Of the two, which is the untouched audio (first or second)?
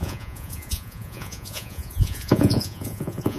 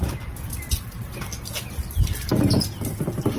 second